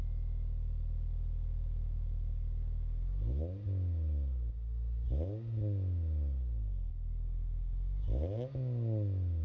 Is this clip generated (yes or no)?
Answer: no